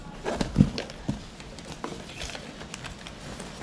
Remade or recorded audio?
recorded